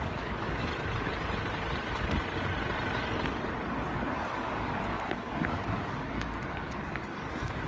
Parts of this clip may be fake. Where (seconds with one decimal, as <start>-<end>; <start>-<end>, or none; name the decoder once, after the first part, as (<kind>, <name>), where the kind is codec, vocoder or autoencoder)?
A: 0.0-0.7 (codec, DAC); 3.7-7.7